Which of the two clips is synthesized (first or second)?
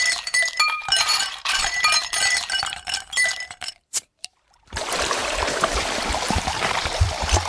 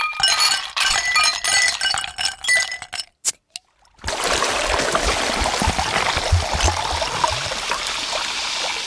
first